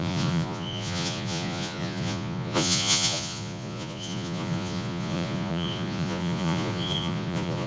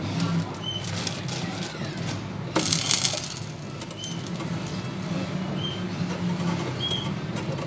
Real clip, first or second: second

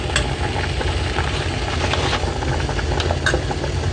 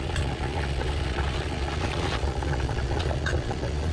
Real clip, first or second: first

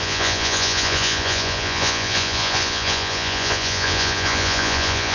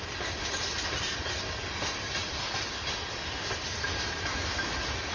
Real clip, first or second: second